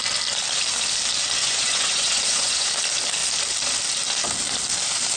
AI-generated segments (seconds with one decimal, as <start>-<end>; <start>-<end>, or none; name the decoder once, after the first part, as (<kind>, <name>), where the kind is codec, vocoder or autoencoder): 1.4-2.7 (vocoder, Vocos)